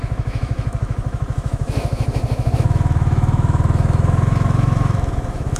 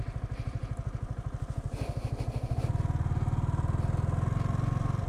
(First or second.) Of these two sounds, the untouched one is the second